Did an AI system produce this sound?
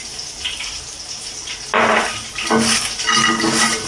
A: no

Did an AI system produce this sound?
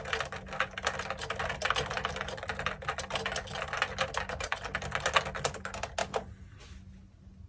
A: no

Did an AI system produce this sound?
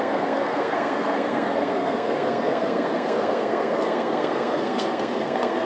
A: yes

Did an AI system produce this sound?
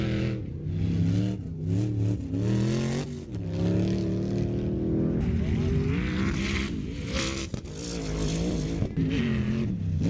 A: no